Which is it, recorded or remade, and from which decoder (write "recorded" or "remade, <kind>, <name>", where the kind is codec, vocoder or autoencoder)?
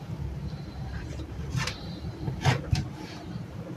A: remade, vocoder, BigVGAN v2